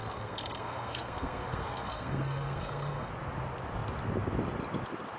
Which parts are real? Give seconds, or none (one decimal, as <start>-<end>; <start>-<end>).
3.1-5.2